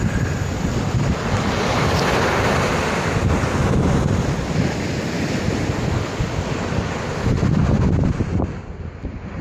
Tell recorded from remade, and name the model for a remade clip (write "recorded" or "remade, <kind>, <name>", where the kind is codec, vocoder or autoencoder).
recorded